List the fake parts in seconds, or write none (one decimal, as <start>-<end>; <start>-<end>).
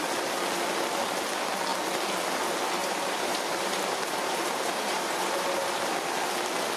2.8-5.8